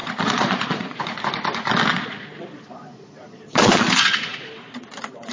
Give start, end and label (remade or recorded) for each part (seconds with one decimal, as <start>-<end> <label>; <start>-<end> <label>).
0.0-1.0 remade; 1.0-1.9 recorded; 1.9-5.3 remade